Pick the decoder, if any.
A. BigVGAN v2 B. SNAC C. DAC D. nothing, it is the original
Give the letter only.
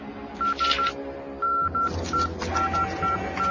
D